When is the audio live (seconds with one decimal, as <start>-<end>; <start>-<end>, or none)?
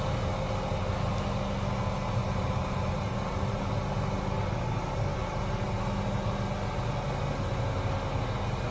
0.0-2.2; 3.6-5.1; 5.8-8.7